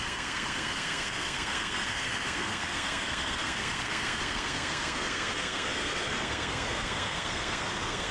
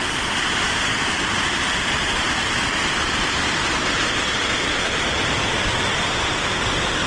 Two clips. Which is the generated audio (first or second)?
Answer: first